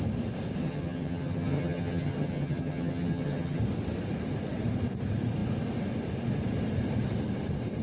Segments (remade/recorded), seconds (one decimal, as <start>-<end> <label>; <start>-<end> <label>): 0.0-0.6 recorded; 0.6-3.6 remade; 3.6-7.8 recorded

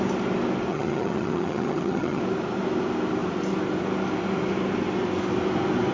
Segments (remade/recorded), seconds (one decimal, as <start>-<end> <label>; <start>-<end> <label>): 0.0-0.7 recorded; 0.7-2.2 remade; 2.2-5.9 recorded

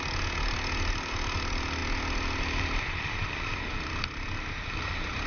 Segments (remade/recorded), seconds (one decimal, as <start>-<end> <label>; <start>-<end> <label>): 0.0-5.3 recorded

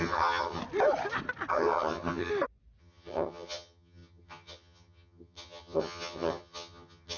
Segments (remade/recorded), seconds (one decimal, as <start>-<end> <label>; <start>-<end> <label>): 0.0-0.6 remade; 0.6-1.5 recorded; 1.5-2.3 remade; 2.3-2.8 recorded; 2.8-7.2 remade

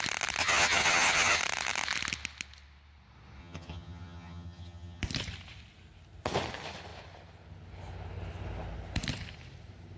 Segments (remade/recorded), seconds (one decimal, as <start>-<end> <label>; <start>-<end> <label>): 0.0-0.4 recorded; 0.4-1.4 remade; 1.4-3.4 recorded; 3.4-5.0 remade; 5.0-10.0 recorded